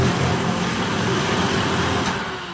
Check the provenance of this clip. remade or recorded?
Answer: recorded